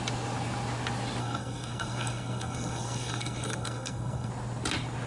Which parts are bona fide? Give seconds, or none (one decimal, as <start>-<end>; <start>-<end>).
0.0-1.2; 4.3-5.1

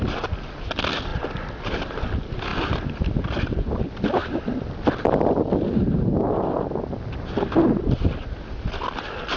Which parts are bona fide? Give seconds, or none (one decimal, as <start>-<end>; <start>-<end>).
0.0-9.4

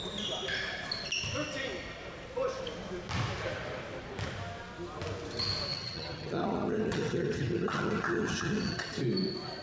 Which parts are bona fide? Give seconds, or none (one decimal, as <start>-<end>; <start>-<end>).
0.0-5.7; 9.0-9.6

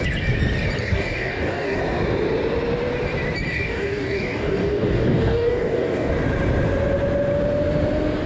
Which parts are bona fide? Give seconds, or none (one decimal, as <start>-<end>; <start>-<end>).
0.0-0.8; 1.8-3.5; 6.1-8.3